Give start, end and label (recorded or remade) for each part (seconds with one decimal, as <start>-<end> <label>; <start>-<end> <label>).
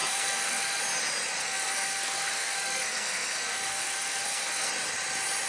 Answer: 0.0-0.8 remade; 0.8-1.4 recorded; 1.4-4.7 remade; 4.7-5.5 recorded